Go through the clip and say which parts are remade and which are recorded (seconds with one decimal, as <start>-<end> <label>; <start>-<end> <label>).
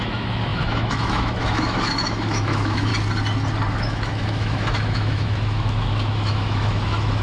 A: 0.0-2.9 remade; 2.9-3.7 recorded; 3.7-7.2 remade